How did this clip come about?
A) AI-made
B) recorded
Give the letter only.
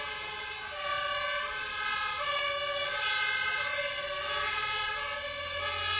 B